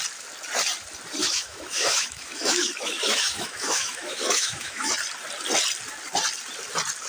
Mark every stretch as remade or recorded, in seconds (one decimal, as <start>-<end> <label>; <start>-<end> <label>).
0.0-1.2 recorded; 1.2-4.9 remade; 4.9-7.1 recorded